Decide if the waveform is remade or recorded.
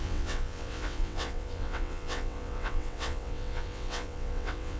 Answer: remade